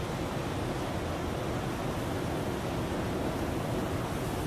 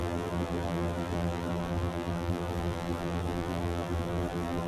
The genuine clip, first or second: first